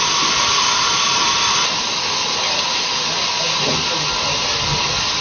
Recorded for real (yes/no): yes